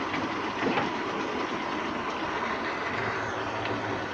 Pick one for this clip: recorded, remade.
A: recorded